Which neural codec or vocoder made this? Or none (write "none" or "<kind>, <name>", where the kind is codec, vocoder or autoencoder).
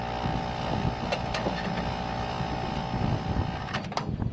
none